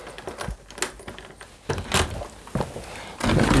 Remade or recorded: recorded